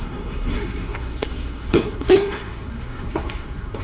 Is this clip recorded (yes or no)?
no